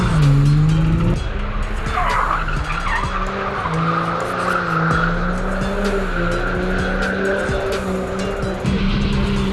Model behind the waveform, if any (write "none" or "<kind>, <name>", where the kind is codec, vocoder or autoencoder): none